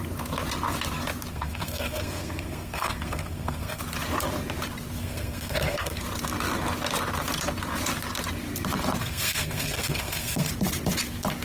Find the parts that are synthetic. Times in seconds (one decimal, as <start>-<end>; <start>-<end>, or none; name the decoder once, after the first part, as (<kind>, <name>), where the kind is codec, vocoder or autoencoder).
1.3-3.8 (codec, SNAC); 5.0-6.0; 9.0-10.5